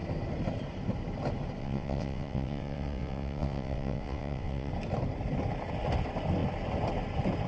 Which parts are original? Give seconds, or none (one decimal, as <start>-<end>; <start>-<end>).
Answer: 0.0-1.6; 4.7-7.5